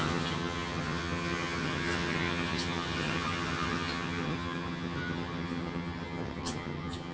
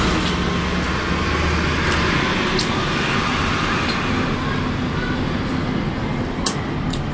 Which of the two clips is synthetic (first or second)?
first